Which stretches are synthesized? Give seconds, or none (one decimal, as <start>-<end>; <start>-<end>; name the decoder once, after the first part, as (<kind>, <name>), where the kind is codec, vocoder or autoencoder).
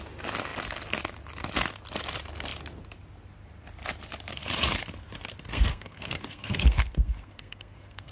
5.5-8.1 (codec, SNAC)